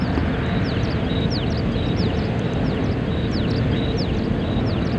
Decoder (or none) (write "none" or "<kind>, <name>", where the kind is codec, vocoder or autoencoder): none